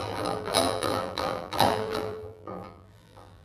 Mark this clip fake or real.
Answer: fake